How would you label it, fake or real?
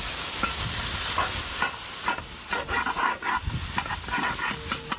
real